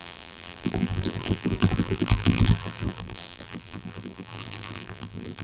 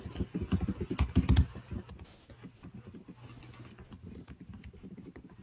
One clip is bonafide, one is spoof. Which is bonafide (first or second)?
second